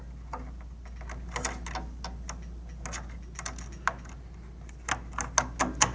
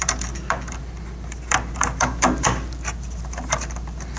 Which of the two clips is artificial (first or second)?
second